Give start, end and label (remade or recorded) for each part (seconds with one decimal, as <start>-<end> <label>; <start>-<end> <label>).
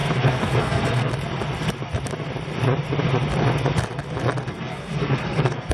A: 0.0-1.1 remade; 1.1-4.5 recorded; 4.5-5.7 remade